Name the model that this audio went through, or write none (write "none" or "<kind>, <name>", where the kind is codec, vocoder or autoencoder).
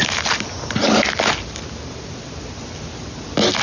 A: none